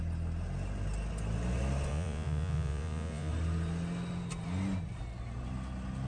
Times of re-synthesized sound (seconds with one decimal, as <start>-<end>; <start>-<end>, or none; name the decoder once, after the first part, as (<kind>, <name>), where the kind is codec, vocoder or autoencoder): 1.9-3.3 (vocoder, Vocos)